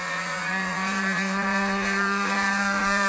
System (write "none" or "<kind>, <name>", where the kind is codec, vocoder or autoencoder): vocoder, Vocos